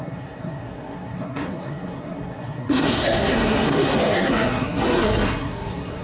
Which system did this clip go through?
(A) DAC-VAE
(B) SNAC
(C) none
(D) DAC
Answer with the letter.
B